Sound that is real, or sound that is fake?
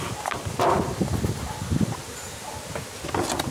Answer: real